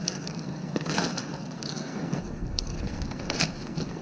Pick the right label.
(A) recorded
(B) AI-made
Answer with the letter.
B